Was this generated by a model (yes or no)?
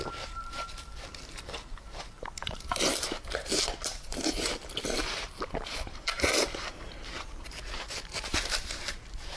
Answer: yes